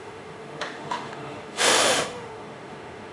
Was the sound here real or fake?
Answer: fake